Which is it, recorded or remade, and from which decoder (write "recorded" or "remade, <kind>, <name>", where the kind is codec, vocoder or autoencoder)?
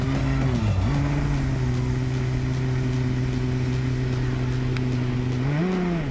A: recorded